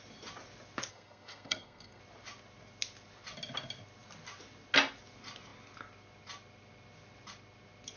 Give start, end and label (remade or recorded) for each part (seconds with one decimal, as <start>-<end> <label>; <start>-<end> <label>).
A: 0.0-0.9 recorded; 0.9-2.0 remade; 2.0-8.0 recorded